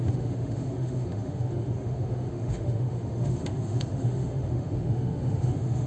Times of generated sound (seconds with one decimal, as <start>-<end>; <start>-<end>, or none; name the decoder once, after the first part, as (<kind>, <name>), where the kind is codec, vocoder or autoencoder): 0.0-5.9 (autoencoder, DAC-VAE)

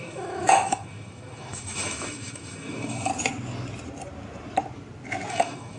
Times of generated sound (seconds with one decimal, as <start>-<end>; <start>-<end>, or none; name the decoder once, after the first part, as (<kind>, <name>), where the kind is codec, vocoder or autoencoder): 0.0-3.1 (autoencoder, DAC-VAE); 5.3-5.8

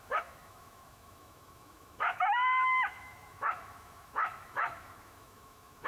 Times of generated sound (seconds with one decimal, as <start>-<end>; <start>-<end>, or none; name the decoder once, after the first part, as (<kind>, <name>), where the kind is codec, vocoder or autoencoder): 0.0-5.9 (autoencoder, DAC-VAE)